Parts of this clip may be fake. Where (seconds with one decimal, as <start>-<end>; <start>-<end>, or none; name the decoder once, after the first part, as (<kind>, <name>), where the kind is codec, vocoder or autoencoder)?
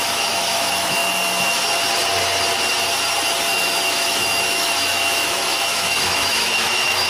0.0-1.0 (autoencoder, DAC-VAE); 3.9-7.1